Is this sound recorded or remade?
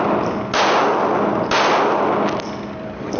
recorded